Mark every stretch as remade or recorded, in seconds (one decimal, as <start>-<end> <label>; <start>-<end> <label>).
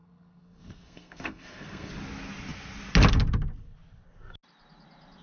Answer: 0.0-1.9 remade; 1.9-5.2 recorded